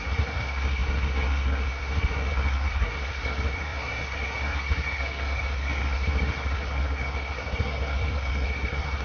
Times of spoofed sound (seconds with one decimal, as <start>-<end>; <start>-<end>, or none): 0.0-9.0